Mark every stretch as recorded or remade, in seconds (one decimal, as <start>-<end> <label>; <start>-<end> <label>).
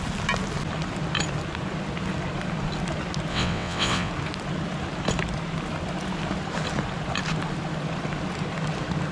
0.0-3.3 recorded; 3.3-4.1 remade; 4.1-9.1 recorded